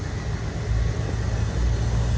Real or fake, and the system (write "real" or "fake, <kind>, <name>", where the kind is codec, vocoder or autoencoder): real